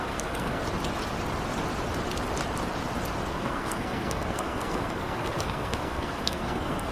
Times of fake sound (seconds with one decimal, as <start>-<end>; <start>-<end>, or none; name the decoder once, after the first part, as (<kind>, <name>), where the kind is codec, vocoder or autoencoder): 0.0-0.6 (codec, SNAC); 3.3-6.9